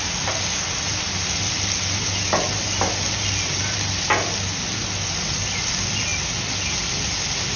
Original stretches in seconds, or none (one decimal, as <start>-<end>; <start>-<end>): 0.0-7.6